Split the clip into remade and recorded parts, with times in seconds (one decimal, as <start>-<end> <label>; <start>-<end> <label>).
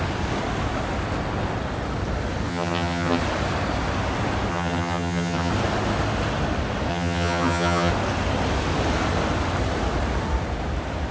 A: 0.0-2.5 recorded; 2.5-3.2 remade; 3.2-4.5 recorded; 4.5-5.5 remade; 5.5-6.9 recorded; 6.9-7.9 remade; 7.9-11.1 recorded